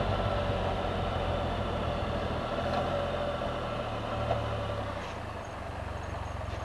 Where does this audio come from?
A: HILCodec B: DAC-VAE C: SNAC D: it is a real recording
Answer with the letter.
D